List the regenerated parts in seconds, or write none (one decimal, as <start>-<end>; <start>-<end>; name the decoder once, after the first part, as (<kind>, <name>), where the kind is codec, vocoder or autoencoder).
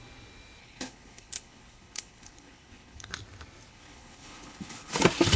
0.6-3.1 (codec, HILCodec); 3.7-4.9